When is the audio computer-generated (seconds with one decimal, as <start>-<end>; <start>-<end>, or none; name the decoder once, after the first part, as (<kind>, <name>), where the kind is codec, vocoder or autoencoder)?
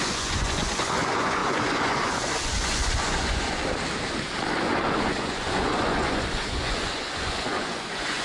0.0-3.6 (vocoder, Vocos); 4.5-8.2